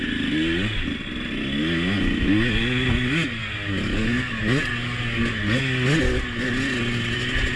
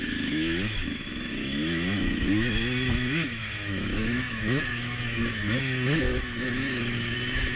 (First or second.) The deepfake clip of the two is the second